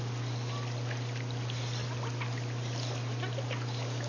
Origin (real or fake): real